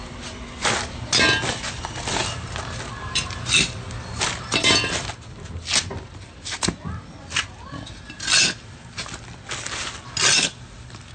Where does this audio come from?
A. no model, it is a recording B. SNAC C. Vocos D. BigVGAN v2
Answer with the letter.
A